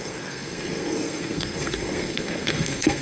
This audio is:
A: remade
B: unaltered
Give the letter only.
A